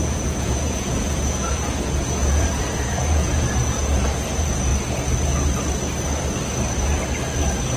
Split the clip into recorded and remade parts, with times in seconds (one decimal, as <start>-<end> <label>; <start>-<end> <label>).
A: 0.0-4.7 remade; 4.7-7.8 recorded